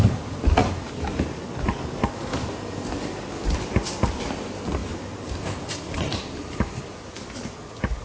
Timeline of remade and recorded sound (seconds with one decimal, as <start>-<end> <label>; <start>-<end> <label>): 0.0-0.6 recorded; 0.6-1.5 remade; 1.5-4.8 recorded; 4.8-6.8 remade; 6.8-8.0 recorded